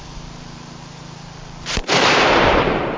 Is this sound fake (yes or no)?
yes